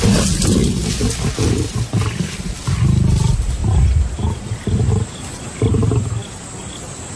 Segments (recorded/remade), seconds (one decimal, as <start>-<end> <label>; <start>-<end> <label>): 0.0-7.2 recorded

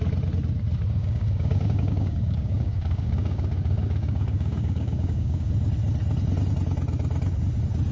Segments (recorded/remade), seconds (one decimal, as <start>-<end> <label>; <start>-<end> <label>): 0.0-1.0 recorded; 1.0-5.5 remade; 5.5-7.9 recorded

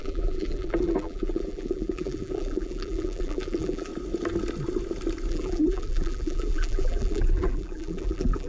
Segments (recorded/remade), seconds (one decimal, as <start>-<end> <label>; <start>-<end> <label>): 0.0-3.9 remade; 3.9-5.3 recorded; 5.3-8.5 remade

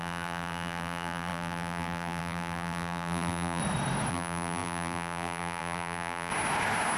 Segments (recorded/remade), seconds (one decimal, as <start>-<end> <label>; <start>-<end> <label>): 0.0-3.6 remade; 3.6-4.1 recorded; 4.1-6.3 remade; 6.3-7.0 recorded

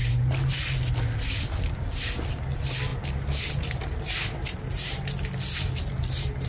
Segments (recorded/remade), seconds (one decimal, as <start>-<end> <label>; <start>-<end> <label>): 0.0-6.5 recorded

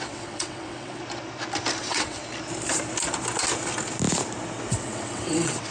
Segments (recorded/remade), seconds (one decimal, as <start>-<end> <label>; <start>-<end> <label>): 0.0-1.0 remade; 1.0-1.8 recorded; 1.8-2.2 remade; 2.2-4.7 recorded; 4.7-5.7 remade

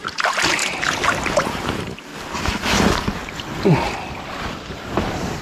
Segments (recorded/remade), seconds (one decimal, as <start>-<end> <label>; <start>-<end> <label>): 0.0-0.6 remade; 0.6-1.3 recorded; 1.3-2.1 remade; 2.1-4.4 recorded; 4.4-5.4 remade

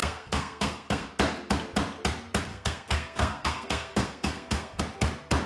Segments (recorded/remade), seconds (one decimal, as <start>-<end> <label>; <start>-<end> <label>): 0.0-1.1 remade; 1.1-2.5 recorded; 2.5-4.8 remade; 4.8-5.5 recorded